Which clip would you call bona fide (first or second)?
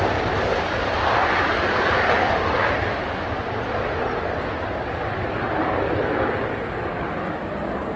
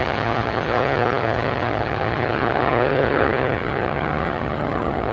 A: first